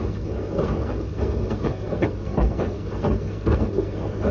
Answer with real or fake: fake